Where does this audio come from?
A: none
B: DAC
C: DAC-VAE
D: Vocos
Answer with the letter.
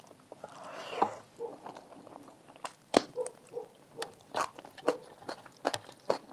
A